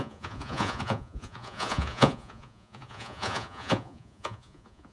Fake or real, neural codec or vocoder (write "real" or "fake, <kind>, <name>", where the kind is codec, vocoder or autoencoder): fake, vocoder, Vocos